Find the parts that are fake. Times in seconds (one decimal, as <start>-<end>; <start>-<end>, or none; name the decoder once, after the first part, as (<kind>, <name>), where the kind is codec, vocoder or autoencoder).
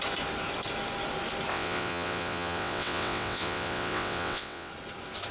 1.5-4.7 (vocoder, WaveNeXt)